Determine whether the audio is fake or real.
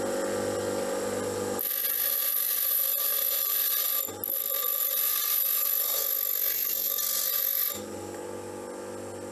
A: real